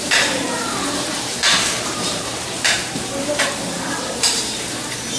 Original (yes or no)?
no